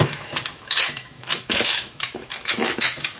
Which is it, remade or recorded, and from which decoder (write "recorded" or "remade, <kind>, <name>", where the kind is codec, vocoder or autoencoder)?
remade, autoencoder, DAC-VAE